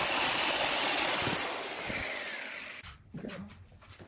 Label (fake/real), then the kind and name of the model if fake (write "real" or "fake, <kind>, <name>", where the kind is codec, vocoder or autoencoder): real